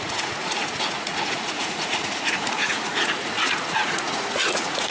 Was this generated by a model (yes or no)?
yes